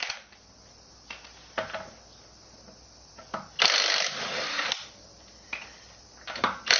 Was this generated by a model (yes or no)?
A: no